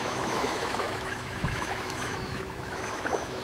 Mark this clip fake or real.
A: fake